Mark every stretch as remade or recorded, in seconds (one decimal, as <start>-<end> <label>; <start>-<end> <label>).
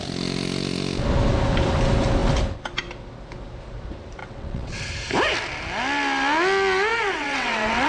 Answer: 0.0-4.2 recorded; 4.2-4.9 remade; 4.9-6.9 recorded; 6.9-7.9 remade